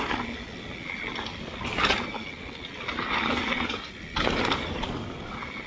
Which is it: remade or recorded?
recorded